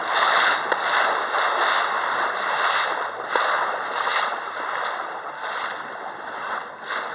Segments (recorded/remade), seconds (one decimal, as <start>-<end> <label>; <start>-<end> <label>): 0.0-0.6 remade; 0.6-7.1 recorded